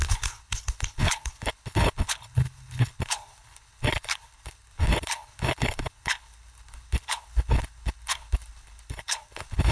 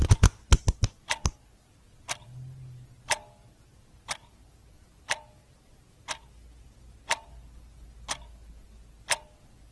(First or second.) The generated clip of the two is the first